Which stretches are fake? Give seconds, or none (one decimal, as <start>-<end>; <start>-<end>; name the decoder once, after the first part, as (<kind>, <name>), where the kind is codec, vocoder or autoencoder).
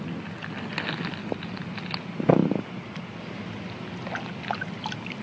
none